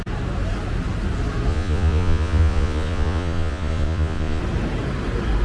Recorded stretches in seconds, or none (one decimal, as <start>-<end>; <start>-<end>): 0.0-1.5; 4.4-5.4